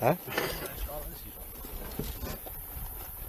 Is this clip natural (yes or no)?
no